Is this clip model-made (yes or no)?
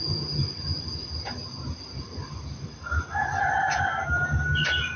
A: no